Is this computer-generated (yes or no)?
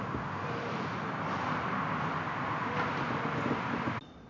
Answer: no